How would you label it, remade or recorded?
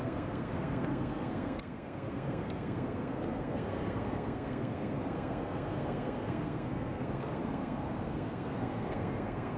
remade